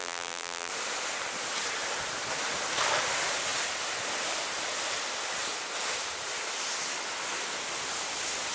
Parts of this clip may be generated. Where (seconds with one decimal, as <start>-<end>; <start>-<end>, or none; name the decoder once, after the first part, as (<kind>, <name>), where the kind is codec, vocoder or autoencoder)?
0.0-0.7 (vocoder, BigVGAN v2)